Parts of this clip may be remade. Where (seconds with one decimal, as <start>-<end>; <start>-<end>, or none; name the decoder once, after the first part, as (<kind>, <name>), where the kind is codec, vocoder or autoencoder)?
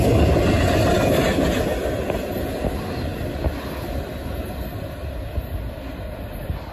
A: none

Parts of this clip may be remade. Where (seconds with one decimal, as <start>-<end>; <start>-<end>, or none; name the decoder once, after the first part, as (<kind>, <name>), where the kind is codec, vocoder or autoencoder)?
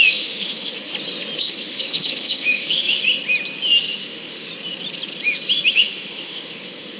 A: 0.0-0.9 (autoencoder, DAC-VAE); 1.4-3.0; 3.8-4.5; 5.7-7.0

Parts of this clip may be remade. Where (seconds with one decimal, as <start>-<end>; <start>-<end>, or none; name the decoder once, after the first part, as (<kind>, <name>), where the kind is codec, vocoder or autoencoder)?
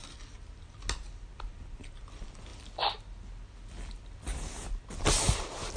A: none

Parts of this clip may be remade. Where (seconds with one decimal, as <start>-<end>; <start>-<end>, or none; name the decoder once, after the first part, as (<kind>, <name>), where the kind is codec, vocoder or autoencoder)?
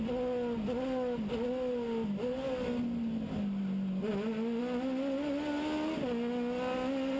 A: none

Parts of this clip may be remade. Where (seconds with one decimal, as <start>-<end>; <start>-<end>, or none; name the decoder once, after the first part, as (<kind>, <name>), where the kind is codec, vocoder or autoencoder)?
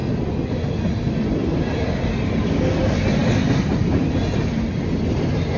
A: none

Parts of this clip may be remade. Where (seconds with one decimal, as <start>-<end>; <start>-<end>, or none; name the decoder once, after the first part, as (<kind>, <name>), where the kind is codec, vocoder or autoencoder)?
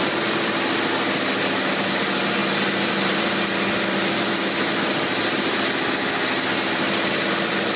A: none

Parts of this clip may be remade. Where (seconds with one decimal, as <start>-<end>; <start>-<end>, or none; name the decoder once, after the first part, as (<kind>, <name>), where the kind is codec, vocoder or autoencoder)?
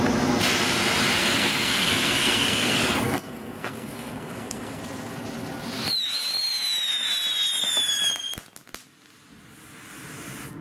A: 1.2-4.8 (codec, SNAC)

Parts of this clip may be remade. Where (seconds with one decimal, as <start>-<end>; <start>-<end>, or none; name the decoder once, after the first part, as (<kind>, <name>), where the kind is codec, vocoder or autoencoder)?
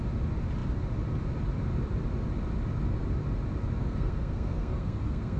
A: 3.8-5.4 (codec, SNAC)